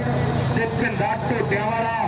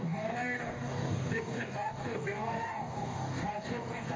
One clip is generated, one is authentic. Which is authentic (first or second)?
first